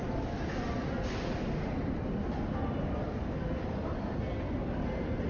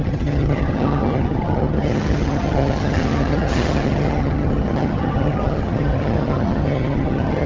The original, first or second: first